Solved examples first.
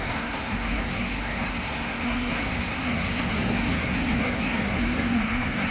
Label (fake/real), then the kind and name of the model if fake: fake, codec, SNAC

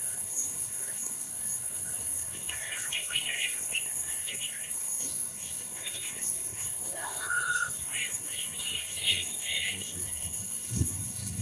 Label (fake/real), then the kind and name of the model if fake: fake, codec, SNAC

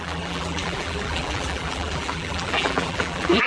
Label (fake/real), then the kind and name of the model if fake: fake, vocoder, BigVGAN v2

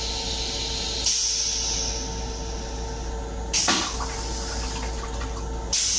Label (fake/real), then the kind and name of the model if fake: real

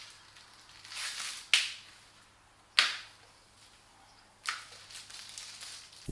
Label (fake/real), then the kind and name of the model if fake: real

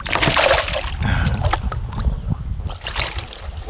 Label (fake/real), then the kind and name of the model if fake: real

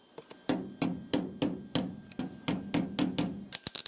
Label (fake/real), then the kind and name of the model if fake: real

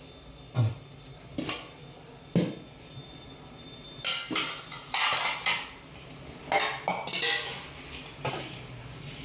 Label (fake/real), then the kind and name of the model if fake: real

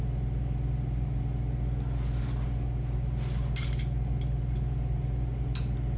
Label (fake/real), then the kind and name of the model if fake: real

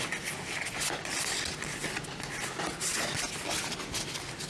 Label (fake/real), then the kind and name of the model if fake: real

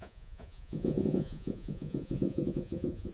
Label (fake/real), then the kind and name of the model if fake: fake, vocoder, Vocos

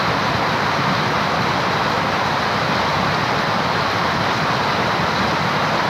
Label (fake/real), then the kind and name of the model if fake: real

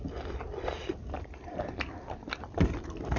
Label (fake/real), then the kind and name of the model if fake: real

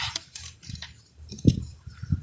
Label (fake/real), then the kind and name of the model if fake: fake, vocoder, BigVGAN v2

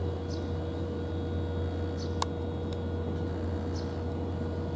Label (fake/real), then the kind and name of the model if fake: real